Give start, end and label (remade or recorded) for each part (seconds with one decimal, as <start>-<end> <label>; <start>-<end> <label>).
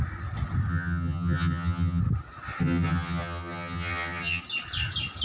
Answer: 0.0-0.7 recorded; 0.7-2.0 remade; 2.0-2.6 recorded; 2.6-4.4 remade; 4.4-5.2 recorded